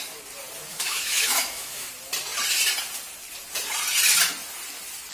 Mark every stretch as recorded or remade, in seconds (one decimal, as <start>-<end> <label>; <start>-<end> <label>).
0.0-0.7 recorded; 0.7-1.9 remade; 1.9-5.1 recorded